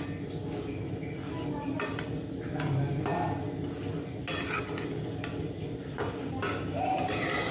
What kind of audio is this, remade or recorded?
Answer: recorded